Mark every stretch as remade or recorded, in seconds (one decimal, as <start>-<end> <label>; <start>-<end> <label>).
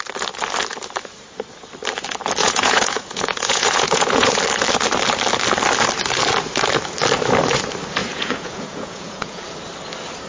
0.0-2.4 recorded; 2.4-4.4 remade; 4.4-8.0 recorded; 8.0-9.4 remade; 9.4-10.3 recorded